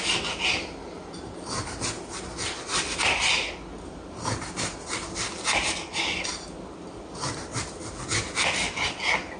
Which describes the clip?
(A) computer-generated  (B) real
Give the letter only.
B